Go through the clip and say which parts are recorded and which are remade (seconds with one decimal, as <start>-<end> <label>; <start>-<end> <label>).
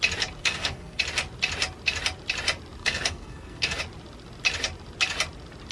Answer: 0.0-0.4 recorded; 0.4-1.0 remade; 1.0-2.8 recorded; 2.8-3.8 remade; 3.8-5.7 recorded